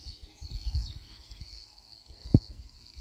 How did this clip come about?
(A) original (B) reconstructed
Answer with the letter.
B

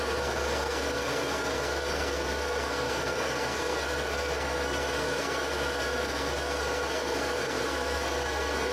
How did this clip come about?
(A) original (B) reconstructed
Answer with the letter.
B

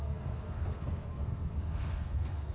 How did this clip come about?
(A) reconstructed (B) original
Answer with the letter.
A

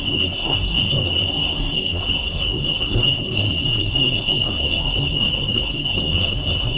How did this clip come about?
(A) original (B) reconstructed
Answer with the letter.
B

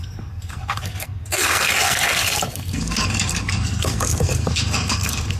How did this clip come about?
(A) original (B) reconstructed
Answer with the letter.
B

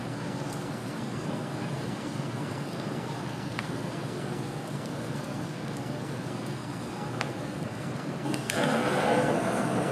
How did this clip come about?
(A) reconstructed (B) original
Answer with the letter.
A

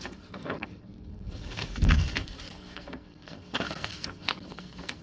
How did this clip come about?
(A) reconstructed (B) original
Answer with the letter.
A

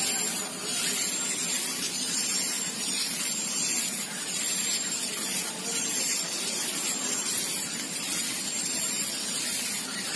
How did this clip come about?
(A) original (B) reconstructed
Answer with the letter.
A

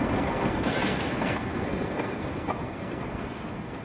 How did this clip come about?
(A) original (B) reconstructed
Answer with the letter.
B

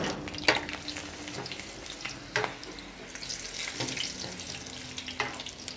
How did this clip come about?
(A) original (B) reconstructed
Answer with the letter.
A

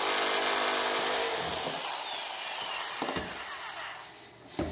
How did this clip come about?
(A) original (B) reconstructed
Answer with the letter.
A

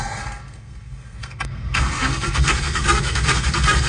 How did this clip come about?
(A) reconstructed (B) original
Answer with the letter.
A